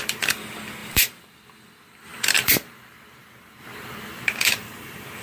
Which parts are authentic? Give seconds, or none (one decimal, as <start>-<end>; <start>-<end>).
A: 0.0-0.8; 1.6-2.1